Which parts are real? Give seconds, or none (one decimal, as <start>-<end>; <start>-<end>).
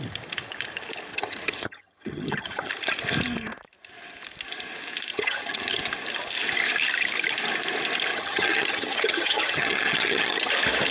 0.0-1.1; 2.7-5.1; 5.8-8.1; 10.5-10.9